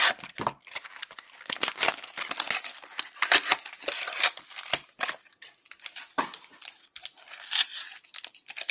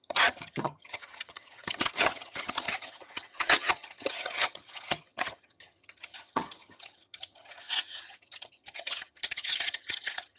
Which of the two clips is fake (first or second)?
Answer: second